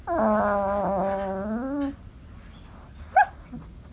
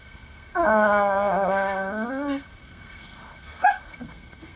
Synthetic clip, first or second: second